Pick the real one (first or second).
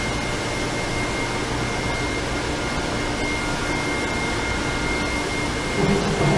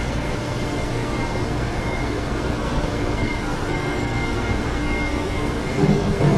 first